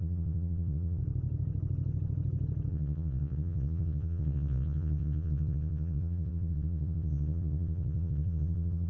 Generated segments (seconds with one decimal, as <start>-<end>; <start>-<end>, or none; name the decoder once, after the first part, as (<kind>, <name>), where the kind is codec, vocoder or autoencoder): 0.0-1.0 (vocoder, Vocos); 2.7-8.9

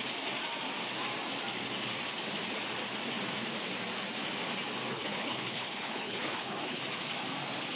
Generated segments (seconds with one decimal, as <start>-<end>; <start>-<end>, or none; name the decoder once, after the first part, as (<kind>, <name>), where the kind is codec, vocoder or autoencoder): 4.9-6.8 (codec, HILCodec)

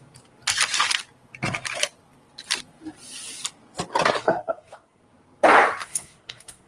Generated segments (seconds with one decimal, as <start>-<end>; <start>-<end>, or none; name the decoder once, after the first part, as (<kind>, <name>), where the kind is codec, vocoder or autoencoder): 4.2-5.0 (codec, SNAC); 5.8-6.7

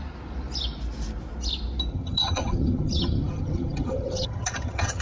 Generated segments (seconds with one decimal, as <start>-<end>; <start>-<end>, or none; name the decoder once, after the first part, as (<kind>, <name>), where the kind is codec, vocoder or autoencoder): 1.9-5.0 (vocoder, HiFi-GAN)

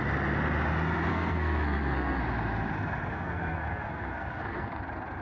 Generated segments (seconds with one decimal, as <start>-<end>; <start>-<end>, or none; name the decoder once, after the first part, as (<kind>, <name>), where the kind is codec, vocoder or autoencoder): 1.1-2.2 (codec, SNAC); 3.1-4.8